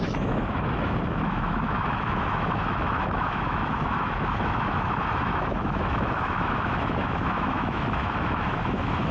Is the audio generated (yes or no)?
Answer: yes